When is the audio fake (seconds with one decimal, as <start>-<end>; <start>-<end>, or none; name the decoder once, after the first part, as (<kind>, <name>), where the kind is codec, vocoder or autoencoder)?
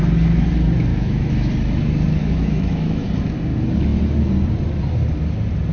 0.9-1.5 (autoencoder, DAC-VAE); 2.2-3.0